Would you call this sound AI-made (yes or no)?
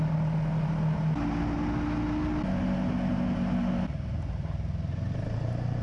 no